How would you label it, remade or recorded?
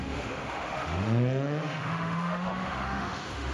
remade